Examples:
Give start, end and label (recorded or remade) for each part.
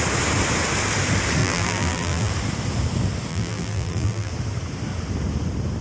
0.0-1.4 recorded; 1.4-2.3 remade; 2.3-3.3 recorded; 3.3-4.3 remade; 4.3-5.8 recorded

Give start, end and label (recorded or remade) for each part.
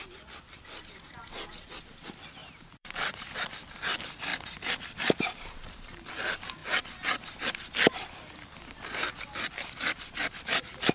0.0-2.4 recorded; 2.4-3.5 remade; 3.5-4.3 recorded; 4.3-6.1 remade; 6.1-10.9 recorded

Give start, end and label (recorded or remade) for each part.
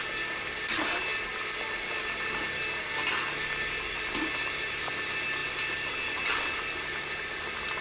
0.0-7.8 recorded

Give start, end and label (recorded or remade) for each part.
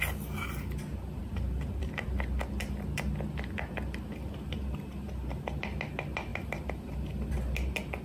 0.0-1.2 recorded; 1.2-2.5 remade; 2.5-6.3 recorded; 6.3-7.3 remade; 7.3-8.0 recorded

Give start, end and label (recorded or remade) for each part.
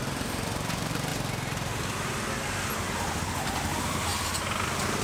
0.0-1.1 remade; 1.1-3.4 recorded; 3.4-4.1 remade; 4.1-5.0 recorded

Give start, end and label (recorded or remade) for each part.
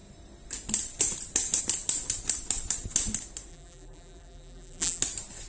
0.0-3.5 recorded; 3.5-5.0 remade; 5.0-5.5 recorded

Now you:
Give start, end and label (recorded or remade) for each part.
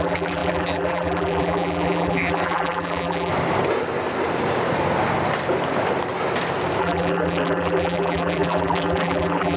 0.0-3.3 remade; 3.3-6.8 recorded; 6.8-9.6 remade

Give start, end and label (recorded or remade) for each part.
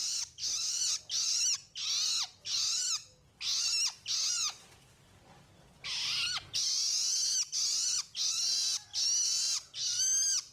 0.0-10.5 recorded